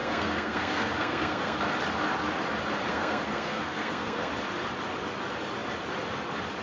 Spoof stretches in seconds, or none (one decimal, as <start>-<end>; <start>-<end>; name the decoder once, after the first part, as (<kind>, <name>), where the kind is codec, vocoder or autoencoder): 0.0-1.6 (codec, SNAC); 2.9-4.3